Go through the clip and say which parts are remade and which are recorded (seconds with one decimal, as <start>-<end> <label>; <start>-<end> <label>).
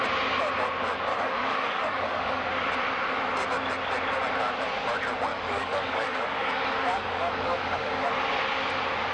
0.0-1.1 recorded; 1.1-2.4 remade; 2.4-5.3 recorded; 5.3-8.1 remade; 8.1-9.1 recorded